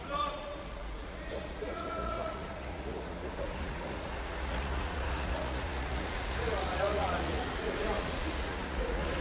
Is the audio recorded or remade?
remade